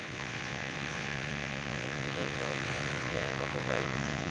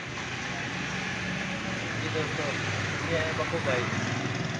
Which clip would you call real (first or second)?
second